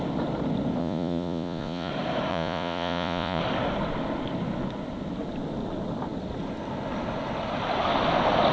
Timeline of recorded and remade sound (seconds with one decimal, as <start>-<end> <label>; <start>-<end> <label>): 0.0-0.8 recorded; 0.8-1.9 remade; 1.9-2.3 recorded; 2.3-3.4 remade; 3.4-8.5 recorded